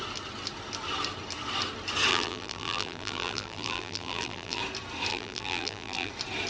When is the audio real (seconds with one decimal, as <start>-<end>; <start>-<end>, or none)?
0.0-2.1; 4.6-5.1; 6.1-6.5